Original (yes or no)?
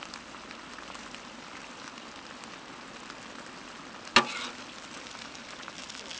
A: yes